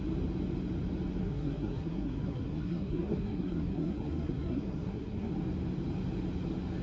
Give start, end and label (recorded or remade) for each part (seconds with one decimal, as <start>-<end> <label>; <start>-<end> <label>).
0.0-1.2 recorded; 1.2-5.3 remade; 5.3-6.8 recorded